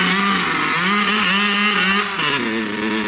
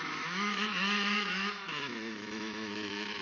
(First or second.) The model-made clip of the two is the second